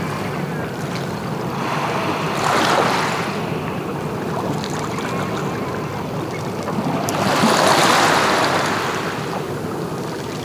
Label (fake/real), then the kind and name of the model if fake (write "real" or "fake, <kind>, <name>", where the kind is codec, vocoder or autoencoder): real